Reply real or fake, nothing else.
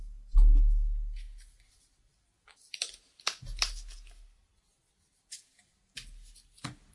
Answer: real